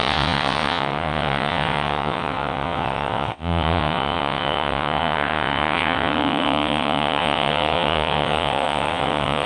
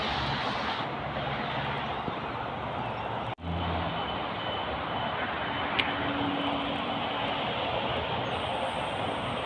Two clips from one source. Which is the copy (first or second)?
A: first